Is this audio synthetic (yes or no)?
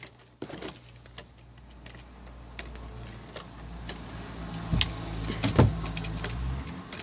no